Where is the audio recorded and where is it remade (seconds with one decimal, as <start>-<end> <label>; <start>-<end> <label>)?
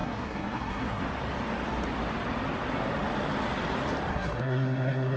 0.0-1.0 remade; 1.0-4.1 recorded; 4.1-5.2 remade